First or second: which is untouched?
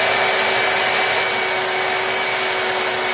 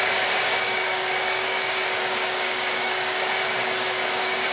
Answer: first